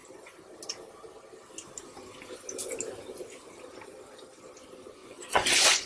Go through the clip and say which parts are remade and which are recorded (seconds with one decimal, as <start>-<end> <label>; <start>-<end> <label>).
0.0-5.0 recorded; 5.0-5.9 remade